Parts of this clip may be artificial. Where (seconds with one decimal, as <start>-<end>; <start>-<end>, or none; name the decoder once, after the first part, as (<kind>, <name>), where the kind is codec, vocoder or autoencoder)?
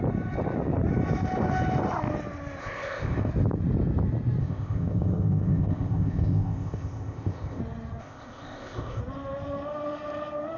2.6-3.3 (codec, ZipCodec); 4.4-7.6; 8.0-9.0